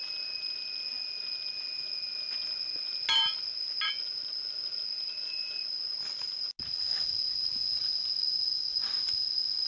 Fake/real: real